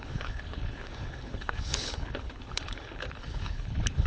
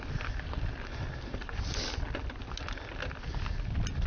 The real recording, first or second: second